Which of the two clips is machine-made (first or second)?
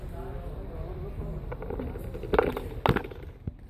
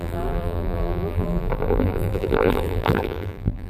second